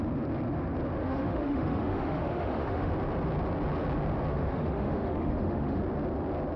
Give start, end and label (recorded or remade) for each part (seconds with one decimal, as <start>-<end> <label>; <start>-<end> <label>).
0.0-1.0 recorded; 1.0-2.9 remade; 2.9-4.3 recorded; 4.3-5.8 remade; 5.8-6.6 recorded